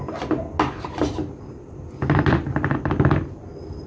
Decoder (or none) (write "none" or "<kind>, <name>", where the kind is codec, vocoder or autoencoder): none